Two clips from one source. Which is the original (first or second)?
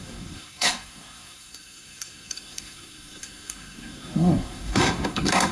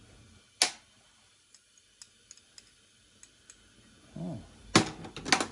second